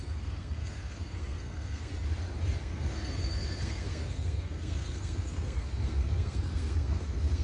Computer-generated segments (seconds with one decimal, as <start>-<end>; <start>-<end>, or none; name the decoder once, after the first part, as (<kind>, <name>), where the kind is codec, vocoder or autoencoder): 0.0-1.9 (codec, SNAC); 2.6-7.4